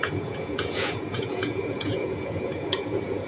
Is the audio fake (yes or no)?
yes